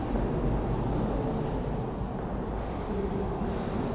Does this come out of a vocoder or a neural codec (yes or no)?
no